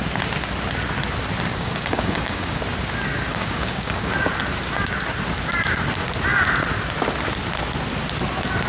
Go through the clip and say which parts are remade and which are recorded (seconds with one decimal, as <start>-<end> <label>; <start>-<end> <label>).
0.0-1.5 recorded; 1.5-2.6 remade; 2.6-3.3 recorded; 3.3-4.1 remade; 4.1-8.7 recorded